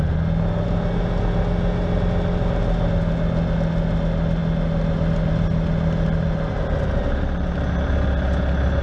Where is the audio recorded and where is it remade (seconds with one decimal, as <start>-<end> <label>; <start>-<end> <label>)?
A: 0.0-8.8 recorded